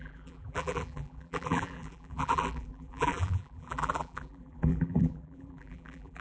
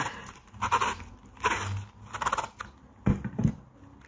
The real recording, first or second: second